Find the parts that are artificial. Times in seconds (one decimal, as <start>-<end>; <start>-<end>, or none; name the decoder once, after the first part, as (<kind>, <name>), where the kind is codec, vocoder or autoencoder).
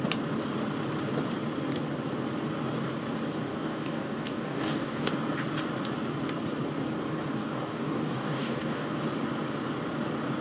3.5-5.1 (codec, DAC); 7.4-8.9